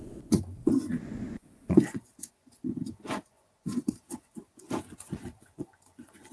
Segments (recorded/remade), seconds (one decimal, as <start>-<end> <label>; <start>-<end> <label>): 0.0-6.3 remade